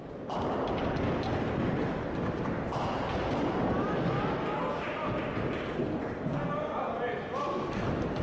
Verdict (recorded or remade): recorded